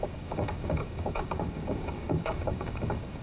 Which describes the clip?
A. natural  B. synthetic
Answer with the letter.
B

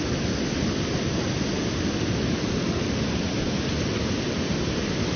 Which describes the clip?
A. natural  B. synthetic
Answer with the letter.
A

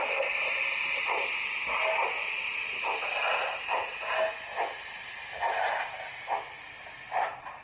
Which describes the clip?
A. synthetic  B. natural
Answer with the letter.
B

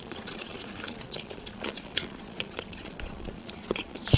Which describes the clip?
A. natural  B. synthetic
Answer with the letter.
B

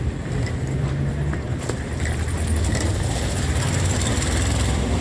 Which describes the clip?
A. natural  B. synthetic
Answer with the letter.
B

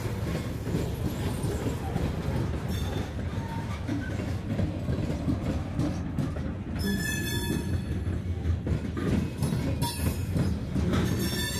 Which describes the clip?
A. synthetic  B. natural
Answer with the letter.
B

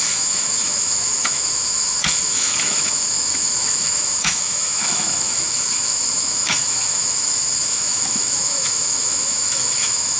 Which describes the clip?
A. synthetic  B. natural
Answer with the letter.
A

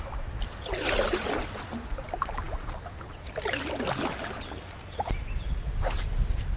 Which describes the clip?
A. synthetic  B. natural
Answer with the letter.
B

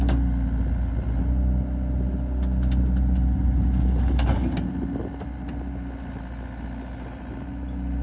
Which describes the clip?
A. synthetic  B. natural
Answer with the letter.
B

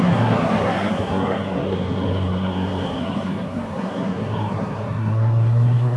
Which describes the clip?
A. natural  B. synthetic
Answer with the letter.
B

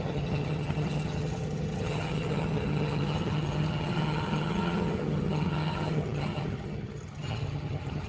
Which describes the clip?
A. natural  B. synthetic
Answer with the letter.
B